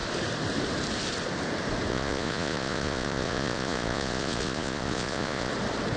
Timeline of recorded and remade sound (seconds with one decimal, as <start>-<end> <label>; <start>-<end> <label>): 0.0-1.9 recorded; 1.9-5.5 remade; 5.5-6.0 recorded